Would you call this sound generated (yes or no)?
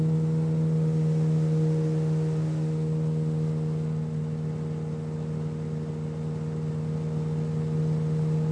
no